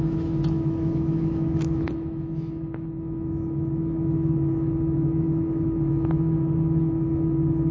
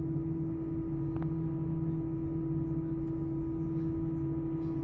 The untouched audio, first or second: second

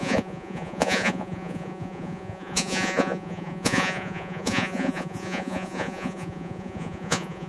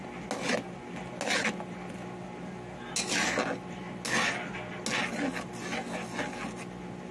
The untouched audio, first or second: second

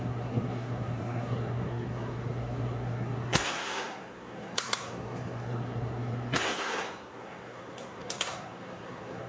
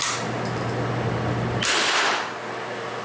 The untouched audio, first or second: second